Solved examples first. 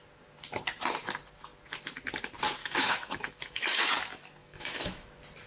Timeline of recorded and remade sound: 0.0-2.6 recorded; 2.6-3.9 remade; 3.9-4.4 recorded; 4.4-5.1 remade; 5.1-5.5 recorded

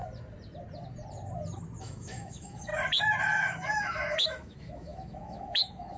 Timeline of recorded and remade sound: 0.0-1.8 recorded; 1.8-2.7 remade; 2.7-3.2 recorded; 3.2-6.0 remade

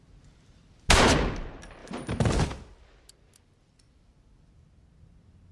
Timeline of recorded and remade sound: 0.0-5.5 recorded

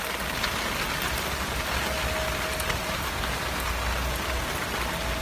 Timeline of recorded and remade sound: 0.0-2.5 recorded; 2.5-4.4 remade; 4.4-5.2 recorded

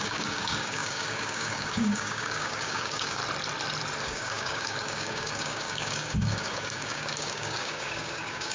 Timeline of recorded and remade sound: 0.0-3.2 remade; 3.2-4.0 recorded; 4.0-8.5 remade

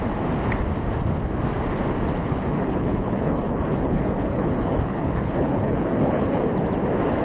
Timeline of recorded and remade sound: 0.0-2.2 recorded; 2.2-6.5 remade; 6.5-7.2 recorded